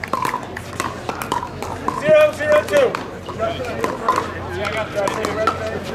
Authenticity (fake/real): real